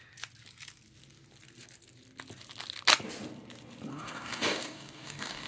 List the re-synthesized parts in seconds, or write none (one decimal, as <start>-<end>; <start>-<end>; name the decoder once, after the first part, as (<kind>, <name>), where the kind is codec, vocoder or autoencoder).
3.9-5.5 (codec, DAC)